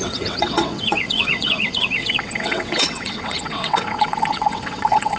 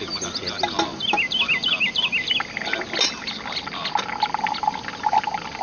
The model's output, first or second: first